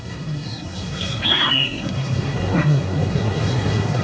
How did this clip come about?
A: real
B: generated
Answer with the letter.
B